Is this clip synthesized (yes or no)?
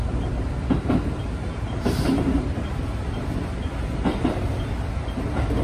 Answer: no